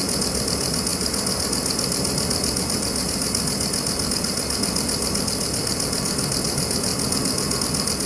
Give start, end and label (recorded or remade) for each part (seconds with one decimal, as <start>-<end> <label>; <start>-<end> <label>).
0.0-8.1 recorded